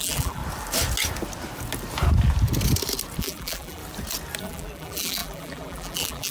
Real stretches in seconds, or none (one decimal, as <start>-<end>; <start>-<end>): 0.4-3.2; 3.8-4.4